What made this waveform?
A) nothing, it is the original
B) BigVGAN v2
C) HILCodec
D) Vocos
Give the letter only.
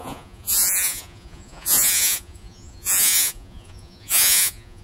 D